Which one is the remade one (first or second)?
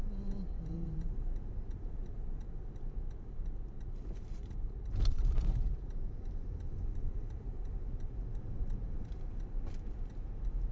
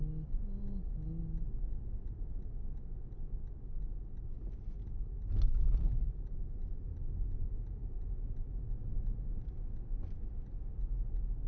first